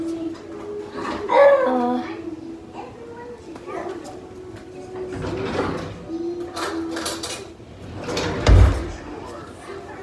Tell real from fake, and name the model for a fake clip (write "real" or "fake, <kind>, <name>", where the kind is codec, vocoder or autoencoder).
real